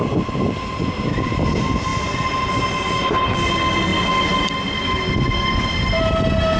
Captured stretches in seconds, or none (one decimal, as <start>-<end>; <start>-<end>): 0.0-6.6